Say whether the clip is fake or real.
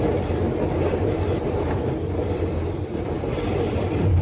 fake